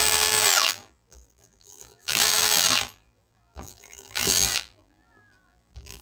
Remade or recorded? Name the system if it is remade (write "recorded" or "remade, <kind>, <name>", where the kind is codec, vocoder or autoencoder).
remade, vocoder, BigVGAN v2